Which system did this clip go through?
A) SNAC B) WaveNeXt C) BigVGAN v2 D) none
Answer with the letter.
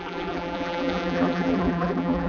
C